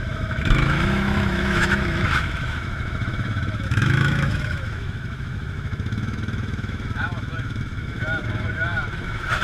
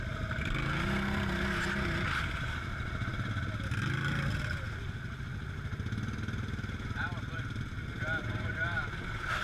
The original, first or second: second